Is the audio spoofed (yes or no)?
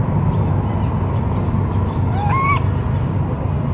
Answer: no